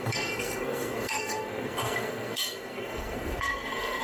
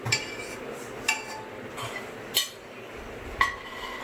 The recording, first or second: second